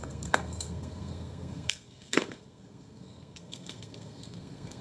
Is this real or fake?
fake